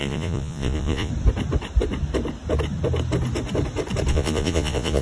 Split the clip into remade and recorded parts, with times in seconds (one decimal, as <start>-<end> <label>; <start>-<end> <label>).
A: 0.0-1.1 remade; 1.1-4.1 recorded; 4.1-5.0 remade